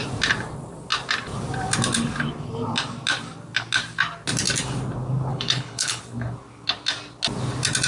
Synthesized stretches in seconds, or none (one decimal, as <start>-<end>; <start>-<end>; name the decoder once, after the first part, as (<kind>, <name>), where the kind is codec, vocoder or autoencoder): 5.3-6.0 (codec, HILCodec)